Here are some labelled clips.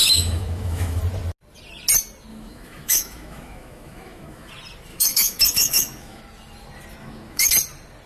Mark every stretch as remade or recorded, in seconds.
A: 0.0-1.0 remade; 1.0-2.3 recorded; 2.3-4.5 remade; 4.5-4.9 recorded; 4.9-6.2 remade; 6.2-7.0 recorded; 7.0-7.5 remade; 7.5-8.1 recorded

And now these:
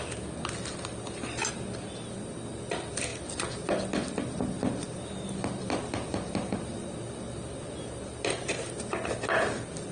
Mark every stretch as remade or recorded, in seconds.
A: 0.0-9.9 recorded

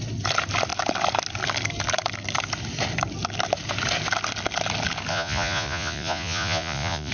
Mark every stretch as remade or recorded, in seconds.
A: 0.0-5.1 recorded; 5.1-7.1 remade